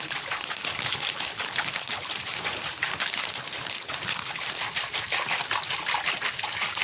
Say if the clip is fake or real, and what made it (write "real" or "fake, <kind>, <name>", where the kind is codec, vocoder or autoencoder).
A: real